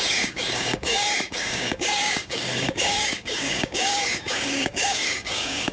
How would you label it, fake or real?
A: fake